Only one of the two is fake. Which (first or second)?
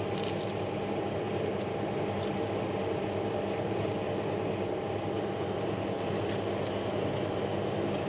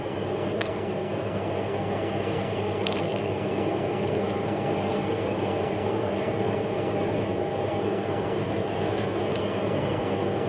second